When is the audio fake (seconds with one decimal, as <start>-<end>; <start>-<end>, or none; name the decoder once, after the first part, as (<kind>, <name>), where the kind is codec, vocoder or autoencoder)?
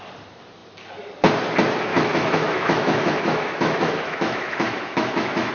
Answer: 1.9-5.5 (autoencoder, DAC-VAE)